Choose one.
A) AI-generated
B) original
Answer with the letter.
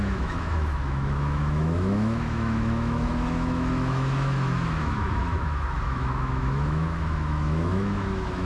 A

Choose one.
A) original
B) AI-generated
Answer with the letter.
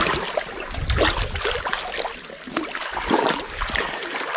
A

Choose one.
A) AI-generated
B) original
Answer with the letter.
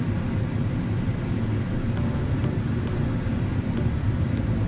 B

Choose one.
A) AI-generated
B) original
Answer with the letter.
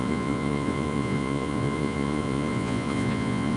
A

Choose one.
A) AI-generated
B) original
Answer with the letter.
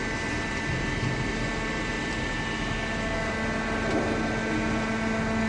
B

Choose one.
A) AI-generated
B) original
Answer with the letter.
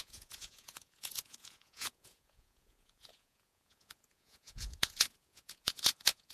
A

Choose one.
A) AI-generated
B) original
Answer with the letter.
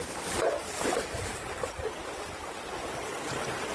B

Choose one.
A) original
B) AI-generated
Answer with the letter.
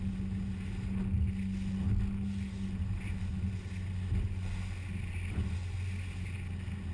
A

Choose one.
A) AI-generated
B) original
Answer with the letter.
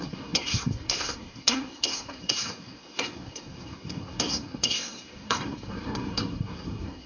A